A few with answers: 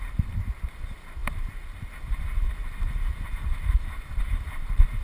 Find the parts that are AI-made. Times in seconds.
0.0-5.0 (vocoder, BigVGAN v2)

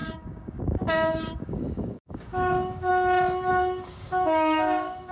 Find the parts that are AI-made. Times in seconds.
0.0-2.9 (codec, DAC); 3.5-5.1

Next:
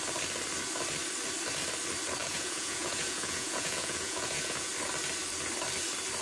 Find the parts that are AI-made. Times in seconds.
2.2-4.7 (vocoder, Vocos)

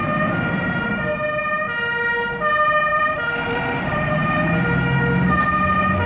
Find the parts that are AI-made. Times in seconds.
2.9-4.3 (vocoder, BigVGAN v2)

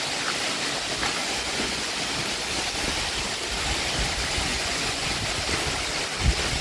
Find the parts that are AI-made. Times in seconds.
1.2-1.9 (vocoder, Vocos); 4.5-5.1